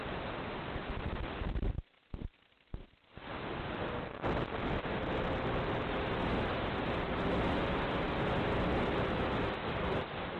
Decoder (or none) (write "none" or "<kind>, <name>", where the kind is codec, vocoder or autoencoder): none